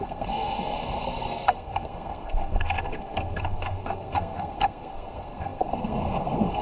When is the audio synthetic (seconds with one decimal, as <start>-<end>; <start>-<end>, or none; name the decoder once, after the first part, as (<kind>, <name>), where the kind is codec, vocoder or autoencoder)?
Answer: 0.0-6.6 (codec, SNAC)